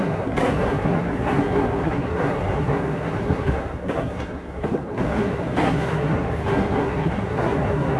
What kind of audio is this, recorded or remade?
remade